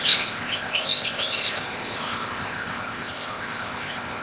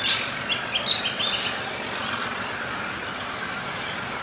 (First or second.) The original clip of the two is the second